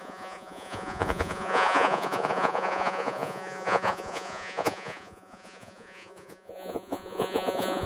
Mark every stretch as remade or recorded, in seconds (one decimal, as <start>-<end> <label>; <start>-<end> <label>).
0.0-7.9 remade